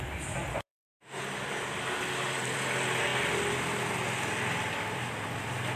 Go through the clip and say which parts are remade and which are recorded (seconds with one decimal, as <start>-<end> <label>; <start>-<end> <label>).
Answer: 0.0-0.5 recorded; 0.5-1.2 remade; 1.2-5.8 recorded